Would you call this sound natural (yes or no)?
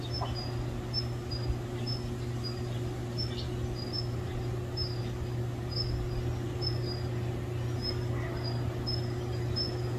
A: yes